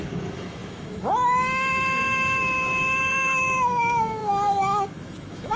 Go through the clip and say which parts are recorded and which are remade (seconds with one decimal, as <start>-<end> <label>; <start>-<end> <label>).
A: 0.0-5.6 remade